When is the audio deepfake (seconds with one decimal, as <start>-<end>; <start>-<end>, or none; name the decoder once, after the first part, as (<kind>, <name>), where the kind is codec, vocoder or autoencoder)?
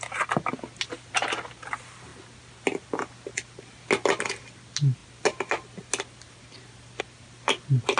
none